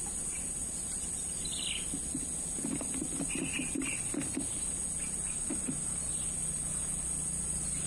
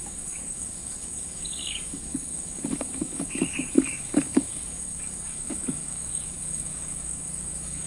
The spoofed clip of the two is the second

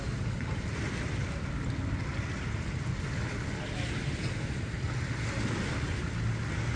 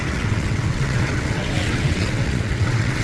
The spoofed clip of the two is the second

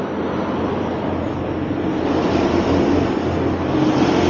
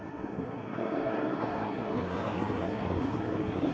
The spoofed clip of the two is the second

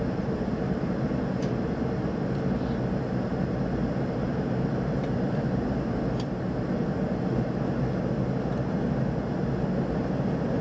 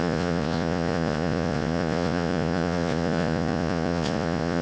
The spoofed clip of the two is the second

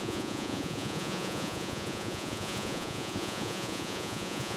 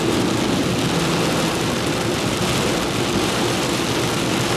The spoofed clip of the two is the first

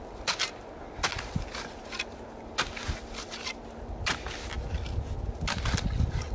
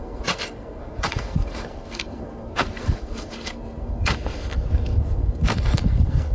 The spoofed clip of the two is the second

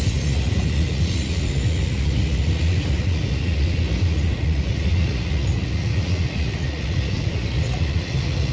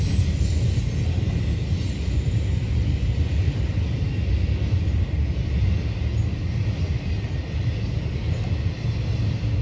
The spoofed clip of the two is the first